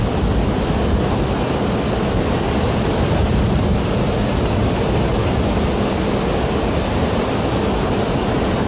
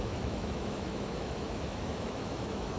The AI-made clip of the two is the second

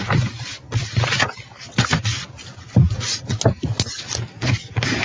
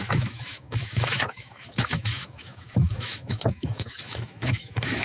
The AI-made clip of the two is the second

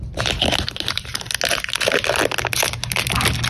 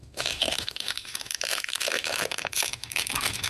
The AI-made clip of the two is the second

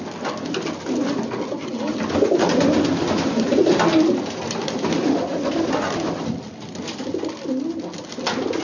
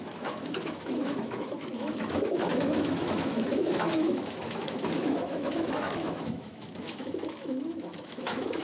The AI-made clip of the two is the second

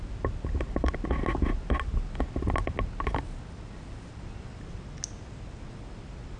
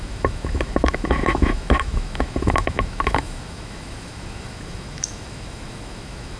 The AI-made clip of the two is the second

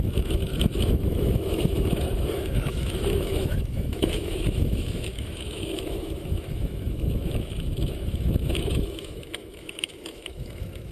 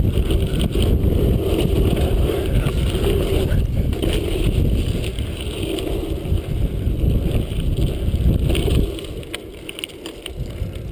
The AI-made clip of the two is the first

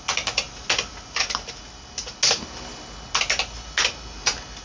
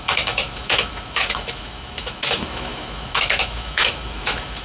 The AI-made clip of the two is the second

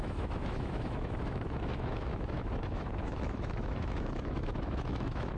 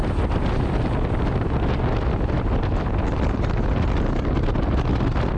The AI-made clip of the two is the first